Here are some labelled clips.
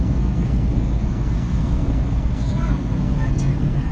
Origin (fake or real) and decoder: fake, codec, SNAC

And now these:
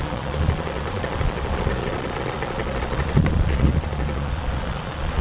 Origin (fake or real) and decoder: fake, vocoder, Vocos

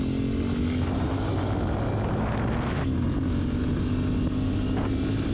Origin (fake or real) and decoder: real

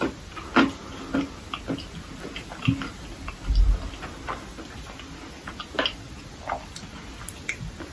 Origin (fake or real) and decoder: real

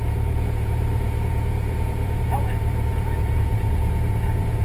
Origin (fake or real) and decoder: fake, vocoder, Vocos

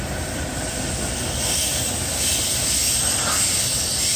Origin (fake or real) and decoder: real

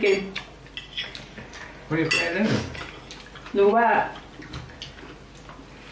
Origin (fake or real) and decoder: real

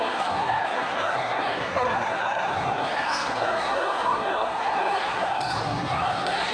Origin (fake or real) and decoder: fake, codec, SNAC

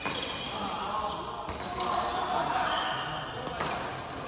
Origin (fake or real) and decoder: real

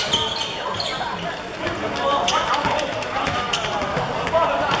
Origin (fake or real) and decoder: real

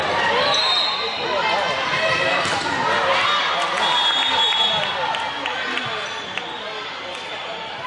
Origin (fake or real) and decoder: real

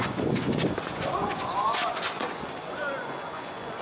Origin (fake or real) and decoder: fake, vocoder, Vocos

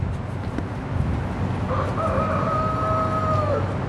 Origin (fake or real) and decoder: real